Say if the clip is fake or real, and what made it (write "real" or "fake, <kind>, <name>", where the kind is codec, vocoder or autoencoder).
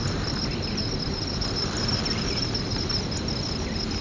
real